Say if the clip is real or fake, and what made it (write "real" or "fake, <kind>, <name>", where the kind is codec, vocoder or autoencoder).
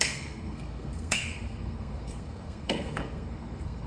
fake, codec, SNAC